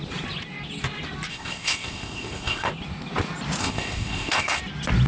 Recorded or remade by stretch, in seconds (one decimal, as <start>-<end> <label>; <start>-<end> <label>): 0.0-1.3 recorded; 1.3-2.7 remade; 2.7-3.6 recorded; 3.6-4.6 remade; 4.6-5.1 recorded